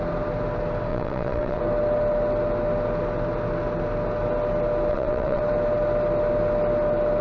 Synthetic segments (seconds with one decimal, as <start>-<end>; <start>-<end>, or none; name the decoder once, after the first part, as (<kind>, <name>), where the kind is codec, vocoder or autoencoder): 0.9-1.6 (vocoder, WaveNeXt); 4.9-5.4